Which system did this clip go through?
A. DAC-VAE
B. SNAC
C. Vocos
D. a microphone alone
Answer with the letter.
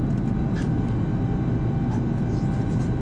D